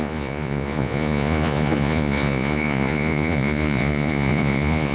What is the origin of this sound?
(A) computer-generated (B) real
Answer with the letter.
A